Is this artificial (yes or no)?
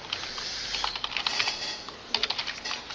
no